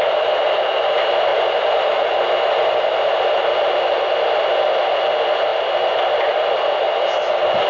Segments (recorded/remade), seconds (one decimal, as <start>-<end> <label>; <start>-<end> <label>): 0.0-1.3 recorded; 1.3-4.0 remade; 4.0-5.5 recorded; 5.5-6.8 remade; 6.8-7.7 recorded

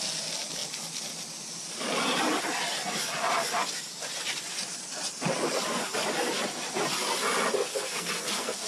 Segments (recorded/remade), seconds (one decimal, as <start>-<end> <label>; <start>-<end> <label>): 0.0-7.7 recorded; 7.7-8.7 remade

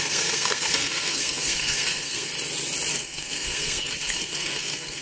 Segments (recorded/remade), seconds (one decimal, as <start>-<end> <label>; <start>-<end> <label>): 0.0-2.3 remade; 2.3-2.9 recorded; 2.9-5.0 remade

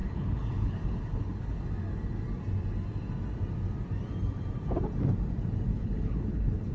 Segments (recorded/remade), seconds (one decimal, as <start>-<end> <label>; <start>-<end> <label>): 0.0-1.6 remade; 1.6-5.7 recorded; 5.7-6.7 remade

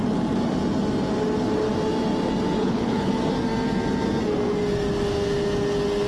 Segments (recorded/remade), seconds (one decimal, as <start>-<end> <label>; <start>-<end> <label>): 0.0-2.6 recorded; 2.6-3.1 remade; 3.1-6.1 recorded

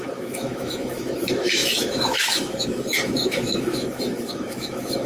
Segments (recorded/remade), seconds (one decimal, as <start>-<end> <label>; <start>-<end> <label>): 0.0-5.1 remade

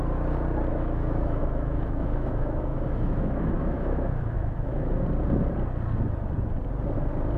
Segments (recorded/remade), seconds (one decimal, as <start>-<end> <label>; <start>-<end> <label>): 0.0-0.7 recorded; 0.7-5.0 remade; 5.0-7.4 recorded